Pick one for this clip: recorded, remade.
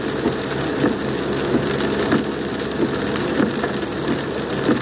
recorded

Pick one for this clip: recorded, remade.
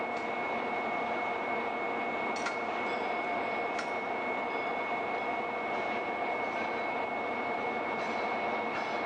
recorded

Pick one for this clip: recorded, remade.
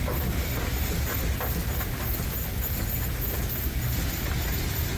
recorded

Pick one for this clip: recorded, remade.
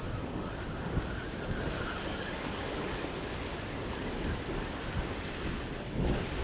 recorded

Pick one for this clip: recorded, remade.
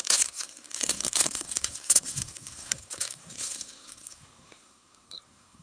remade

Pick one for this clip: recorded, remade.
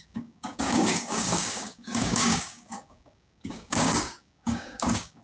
remade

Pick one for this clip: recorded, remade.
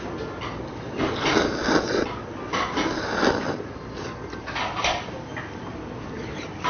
recorded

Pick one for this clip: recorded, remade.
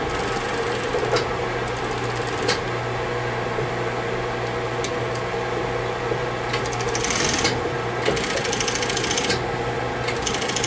recorded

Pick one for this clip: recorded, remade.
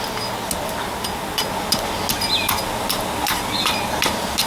recorded